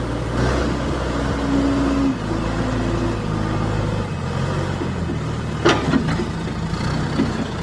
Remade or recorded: recorded